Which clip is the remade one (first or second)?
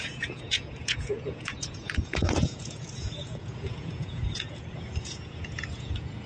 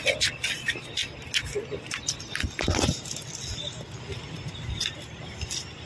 first